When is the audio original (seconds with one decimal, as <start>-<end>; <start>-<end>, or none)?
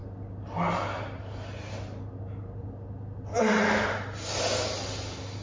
0.0-5.4